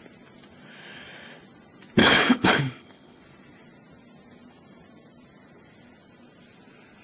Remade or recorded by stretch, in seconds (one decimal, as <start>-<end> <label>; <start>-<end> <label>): 0.0-2.0 recorded; 2.0-3.2 remade; 3.2-7.0 recorded